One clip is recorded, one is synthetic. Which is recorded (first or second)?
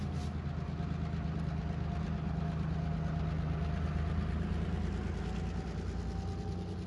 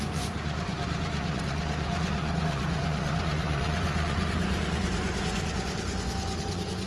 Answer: first